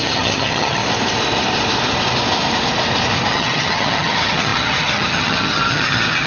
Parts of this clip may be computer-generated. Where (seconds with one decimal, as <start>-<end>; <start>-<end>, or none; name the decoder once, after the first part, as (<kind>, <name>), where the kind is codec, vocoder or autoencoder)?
0.0-0.8 (vocoder, HiFi-GAN); 3.3-6.3